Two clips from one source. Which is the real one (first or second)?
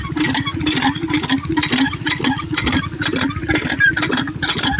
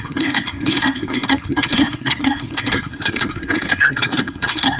first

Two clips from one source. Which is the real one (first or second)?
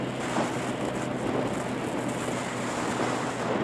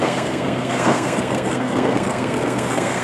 first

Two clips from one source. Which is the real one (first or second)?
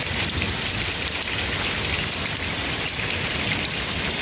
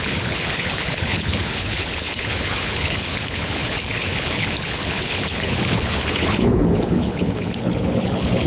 first